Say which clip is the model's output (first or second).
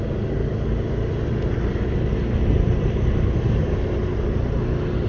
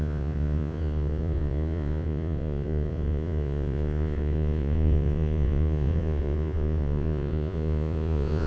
second